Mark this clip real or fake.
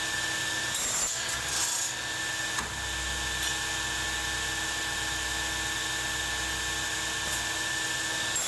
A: real